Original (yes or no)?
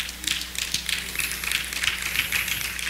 yes